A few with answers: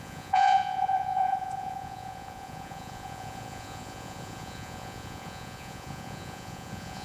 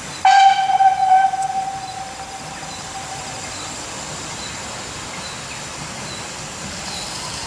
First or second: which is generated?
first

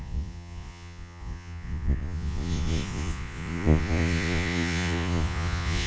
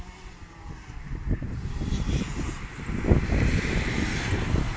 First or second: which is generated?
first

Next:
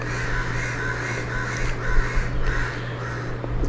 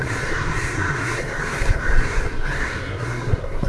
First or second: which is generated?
second